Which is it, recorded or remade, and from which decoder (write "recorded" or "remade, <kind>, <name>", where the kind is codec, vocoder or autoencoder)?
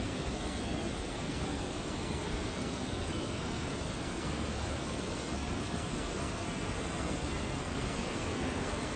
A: remade, codec, SNAC